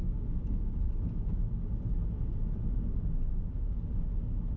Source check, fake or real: real